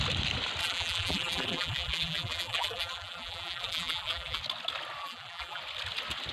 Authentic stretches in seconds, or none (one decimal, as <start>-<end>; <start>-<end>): 0.0-0.6; 4.4-5.0; 5.6-6.3